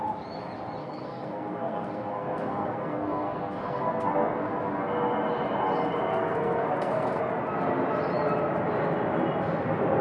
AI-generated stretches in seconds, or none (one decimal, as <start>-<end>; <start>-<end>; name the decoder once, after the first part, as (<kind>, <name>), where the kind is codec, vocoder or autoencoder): 0.8-4.6 (codec, SNAC); 6.1-7.2